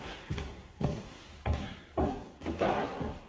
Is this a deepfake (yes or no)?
yes